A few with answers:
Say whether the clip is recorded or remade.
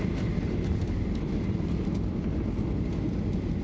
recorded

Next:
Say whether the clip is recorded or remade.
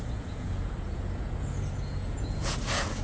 remade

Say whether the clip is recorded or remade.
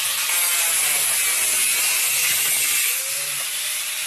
recorded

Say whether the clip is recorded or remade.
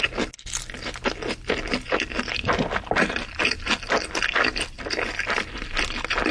recorded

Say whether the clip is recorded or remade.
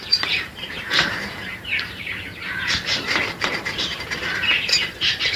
remade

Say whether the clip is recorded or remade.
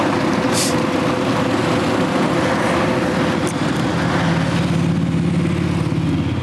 recorded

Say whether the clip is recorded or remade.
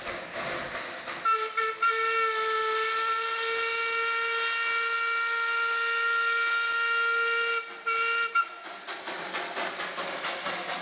recorded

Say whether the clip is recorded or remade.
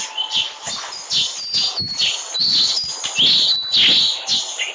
recorded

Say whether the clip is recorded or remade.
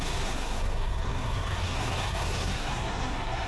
remade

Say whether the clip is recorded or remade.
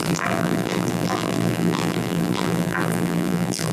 remade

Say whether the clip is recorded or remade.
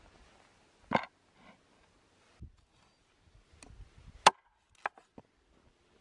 recorded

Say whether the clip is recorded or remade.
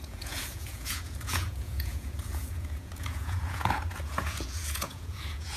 remade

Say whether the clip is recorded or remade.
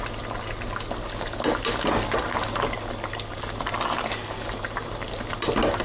recorded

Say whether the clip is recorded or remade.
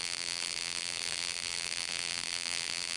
remade